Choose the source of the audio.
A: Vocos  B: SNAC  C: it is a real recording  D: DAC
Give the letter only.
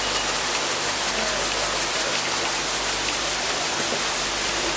C